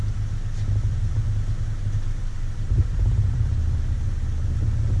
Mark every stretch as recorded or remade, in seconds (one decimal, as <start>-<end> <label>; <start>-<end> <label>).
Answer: 0.0-1.8 recorded; 1.8-4.1 remade; 4.1-5.0 recorded

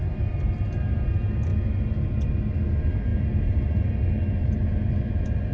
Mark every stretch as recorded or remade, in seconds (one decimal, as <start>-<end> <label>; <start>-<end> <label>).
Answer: 0.0-1.5 remade; 1.5-2.6 recorded; 2.6-5.5 remade

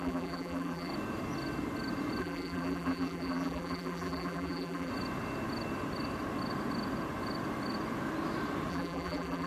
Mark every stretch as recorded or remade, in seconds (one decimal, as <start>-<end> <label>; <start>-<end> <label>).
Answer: 0.0-0.9 remade; 0.9-2.2 recorded; 2.2-4.9 remade; 4.9-8.7 recorded; 8.7-9.5 remade

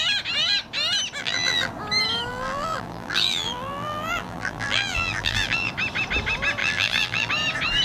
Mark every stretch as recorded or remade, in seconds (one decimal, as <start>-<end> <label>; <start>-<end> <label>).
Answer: 0.0-1.2 recorded; 1.2-1.7 remade; 1.7-2.3 recorded; 2.3-5.7 remade; 5.7-6.6 recorded; 6.6-7.3 remade; 7.3-7.8 recorded

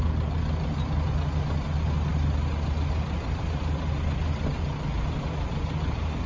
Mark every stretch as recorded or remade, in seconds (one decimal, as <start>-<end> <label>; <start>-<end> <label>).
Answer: 0.0-6.3 recorded

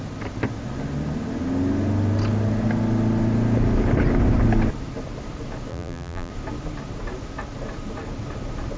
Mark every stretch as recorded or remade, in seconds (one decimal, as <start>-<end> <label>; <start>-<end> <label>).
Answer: 0.0-5.7 recorded; 5.7-6.3 remade; 6.3-8.8 recorded

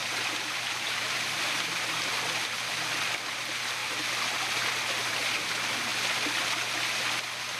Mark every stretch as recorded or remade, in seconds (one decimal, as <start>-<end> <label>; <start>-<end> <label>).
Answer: 0.0-2.1 remade; 2.1-3.8 recorded; 3.8-5.1 remade; 5.1-7.6 recorded